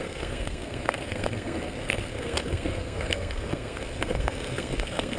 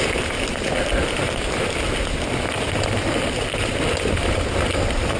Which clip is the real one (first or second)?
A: second